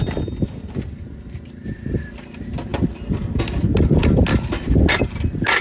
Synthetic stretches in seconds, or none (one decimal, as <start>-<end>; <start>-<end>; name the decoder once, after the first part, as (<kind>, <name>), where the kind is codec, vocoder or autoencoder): none